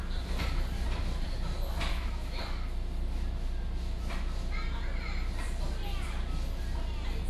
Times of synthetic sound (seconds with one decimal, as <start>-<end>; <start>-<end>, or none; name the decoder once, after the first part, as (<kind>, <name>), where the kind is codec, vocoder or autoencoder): 1.9-2.4 (autoencoder, DAC-VAE)